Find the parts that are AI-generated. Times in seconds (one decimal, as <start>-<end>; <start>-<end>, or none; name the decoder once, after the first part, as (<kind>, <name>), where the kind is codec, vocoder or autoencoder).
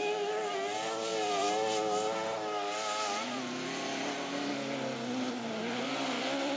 none